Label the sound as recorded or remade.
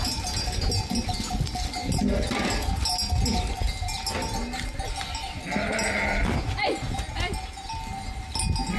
recorded